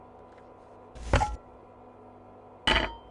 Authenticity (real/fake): real